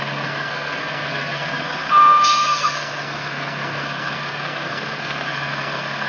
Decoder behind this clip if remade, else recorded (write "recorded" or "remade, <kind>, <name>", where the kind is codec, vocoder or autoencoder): remade, codec, SNAC